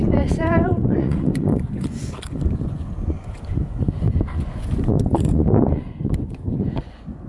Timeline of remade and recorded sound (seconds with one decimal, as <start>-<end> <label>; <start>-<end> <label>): 0.0-7.3 remade

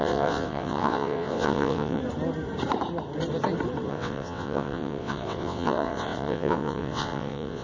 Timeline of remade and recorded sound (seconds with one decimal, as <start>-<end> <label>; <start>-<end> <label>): 0.0-2.0 remade; 2.0-3.9 recorded; 3.9-7.6 remade

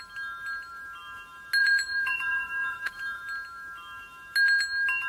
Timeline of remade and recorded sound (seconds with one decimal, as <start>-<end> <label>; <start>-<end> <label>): 0.0-1.6 recorded; 1.6-3.2 remade; 3.2-5.1 recorded

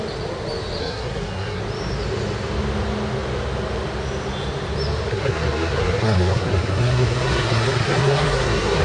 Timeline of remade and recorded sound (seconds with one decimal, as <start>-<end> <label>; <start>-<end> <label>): 0.0-0.8 recorded; 0.8-1.6 remade; 1.6-5.1 recorded; 5.1-8.8 remade

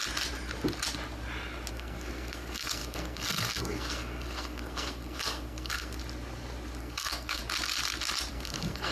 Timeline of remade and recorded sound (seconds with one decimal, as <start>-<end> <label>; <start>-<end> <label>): 0.0-1.7 recorded; 1.7-6.0 remade; 6.0-6.8 recorded; 6.8-7.4 remade; 7.4-8.3 recorded; 8.3-8.9 remade

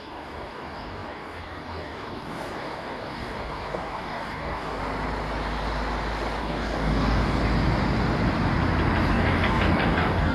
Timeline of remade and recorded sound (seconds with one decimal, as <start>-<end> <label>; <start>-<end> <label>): 0.0-4.8 remade; 4.8-6.4 recorded; 6.4-7.4 remade; 7.4-9.1 recorded; 9.1-10.3 remade

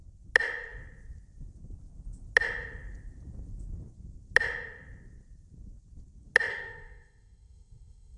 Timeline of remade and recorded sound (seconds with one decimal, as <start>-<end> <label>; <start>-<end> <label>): 0.0-6.5 recorded; 6.5-8.2 remade